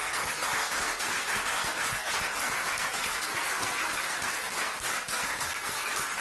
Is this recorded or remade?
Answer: remade